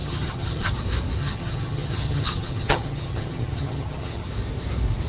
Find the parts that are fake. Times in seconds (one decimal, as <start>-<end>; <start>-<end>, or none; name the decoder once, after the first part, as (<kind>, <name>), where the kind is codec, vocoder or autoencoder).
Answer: 0.0-0.7 (vocoder, HiFi-GAN); 1.2-4.3